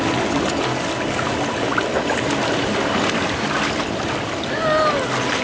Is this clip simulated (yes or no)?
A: no